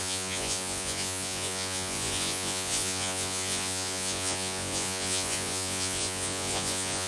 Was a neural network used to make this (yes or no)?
yes